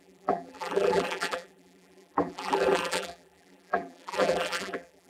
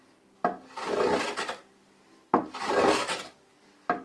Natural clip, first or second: second